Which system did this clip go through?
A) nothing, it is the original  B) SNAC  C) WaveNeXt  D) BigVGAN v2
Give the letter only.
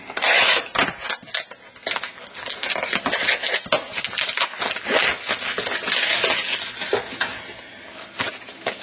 A